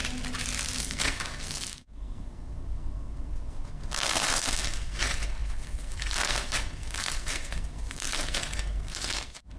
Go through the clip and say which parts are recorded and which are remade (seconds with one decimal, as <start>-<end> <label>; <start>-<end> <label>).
0.0-0.8 recorded; 0.8-9.6 remade